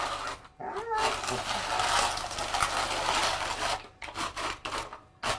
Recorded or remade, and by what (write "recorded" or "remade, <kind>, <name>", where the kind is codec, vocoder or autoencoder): recorded